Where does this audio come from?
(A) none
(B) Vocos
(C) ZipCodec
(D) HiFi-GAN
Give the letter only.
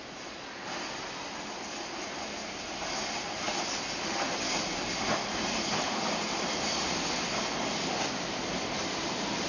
A